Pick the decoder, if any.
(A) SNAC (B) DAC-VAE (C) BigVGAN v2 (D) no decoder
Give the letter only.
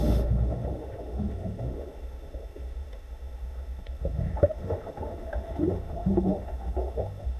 B